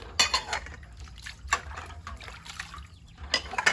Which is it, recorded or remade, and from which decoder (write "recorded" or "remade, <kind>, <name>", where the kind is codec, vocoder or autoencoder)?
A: recorded